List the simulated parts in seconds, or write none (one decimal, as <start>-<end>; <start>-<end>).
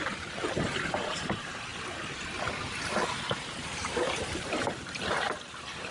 0.0-1.7; 3.4-5.9